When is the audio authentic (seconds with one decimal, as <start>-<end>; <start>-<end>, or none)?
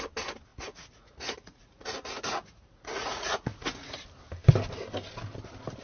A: 0.0-0.5; 4.0-5.8